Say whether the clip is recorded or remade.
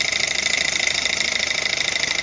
recorded